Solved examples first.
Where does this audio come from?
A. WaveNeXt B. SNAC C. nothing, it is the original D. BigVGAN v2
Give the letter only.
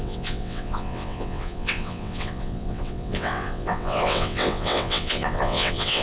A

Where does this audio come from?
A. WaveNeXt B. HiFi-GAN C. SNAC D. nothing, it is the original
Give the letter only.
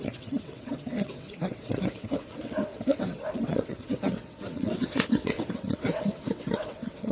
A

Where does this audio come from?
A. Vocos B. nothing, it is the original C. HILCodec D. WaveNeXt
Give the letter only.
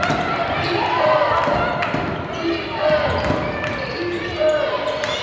B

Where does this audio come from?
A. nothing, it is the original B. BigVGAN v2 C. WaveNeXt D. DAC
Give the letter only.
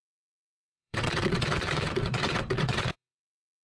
C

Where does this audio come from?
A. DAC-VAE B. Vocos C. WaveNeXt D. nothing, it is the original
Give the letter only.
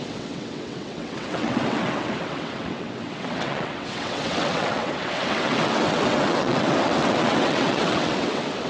C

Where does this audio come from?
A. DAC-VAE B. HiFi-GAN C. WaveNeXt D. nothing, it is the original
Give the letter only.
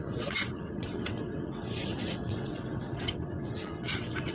C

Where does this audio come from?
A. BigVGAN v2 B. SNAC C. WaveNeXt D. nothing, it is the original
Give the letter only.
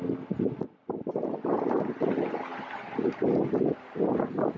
D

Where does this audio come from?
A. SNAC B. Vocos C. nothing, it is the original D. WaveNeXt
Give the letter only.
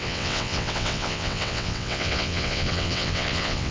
D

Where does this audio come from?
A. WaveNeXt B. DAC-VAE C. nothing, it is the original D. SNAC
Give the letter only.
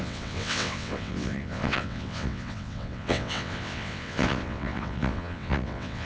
A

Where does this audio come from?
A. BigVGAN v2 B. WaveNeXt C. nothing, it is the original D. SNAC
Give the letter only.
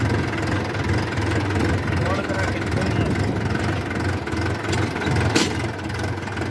C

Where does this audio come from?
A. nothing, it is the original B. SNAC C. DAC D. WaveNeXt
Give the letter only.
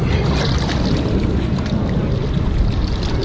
A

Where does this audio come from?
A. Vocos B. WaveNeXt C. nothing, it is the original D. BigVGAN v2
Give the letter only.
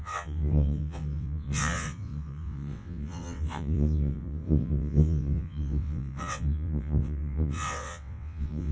B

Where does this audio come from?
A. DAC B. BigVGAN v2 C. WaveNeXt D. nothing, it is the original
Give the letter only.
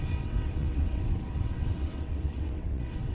C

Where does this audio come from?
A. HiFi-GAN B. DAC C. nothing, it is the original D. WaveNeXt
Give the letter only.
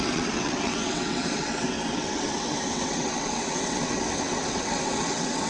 D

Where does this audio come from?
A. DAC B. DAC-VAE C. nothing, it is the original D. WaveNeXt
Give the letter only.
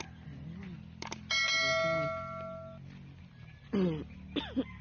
C